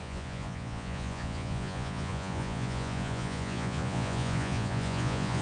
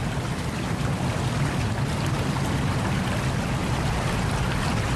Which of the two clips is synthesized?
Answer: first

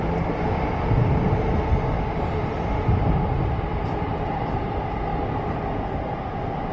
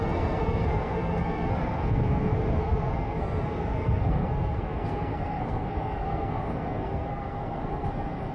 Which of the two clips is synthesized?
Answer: second